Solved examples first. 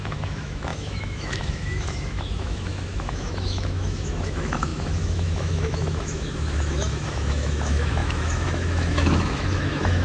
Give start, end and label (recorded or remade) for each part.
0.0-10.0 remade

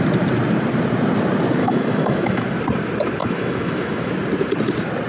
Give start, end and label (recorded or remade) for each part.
0.0-1.6 recorded; 1.6-2.4 remade; 2.4-3.2 recorded; 3.2-4.1 remade; 4.1-5.1 recorded

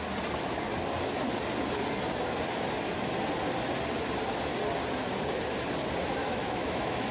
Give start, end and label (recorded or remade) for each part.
0.0-6.2 recorded; 6.2-7.1 remade

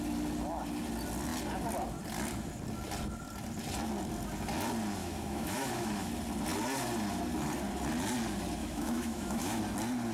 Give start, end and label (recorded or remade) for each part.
0.0-5.0 recorded; 5.0-6.1 remade; 6.1-8.6 recorded; 8.6-9.6 remade; 9.6-10.1 recorded